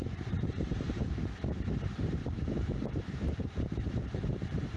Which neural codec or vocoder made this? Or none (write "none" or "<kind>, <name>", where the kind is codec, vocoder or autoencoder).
vocoder, BigVGAN v2